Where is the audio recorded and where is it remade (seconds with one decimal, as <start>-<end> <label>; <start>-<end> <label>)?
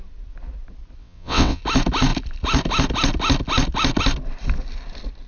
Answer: 0.0-1.0 recorded; 1.0-1.6 remade; 1.6-5.3 recorded